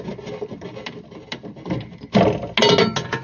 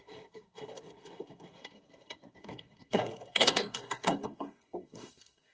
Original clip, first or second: first